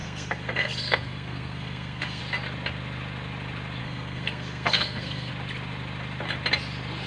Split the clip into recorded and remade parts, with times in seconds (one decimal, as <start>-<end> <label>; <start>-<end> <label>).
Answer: 0.0-2.2 remade; 2.2-3.8 recorded; 3.8-5.3 remade; 5.3-7.1 recorded